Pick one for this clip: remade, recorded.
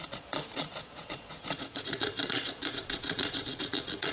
remade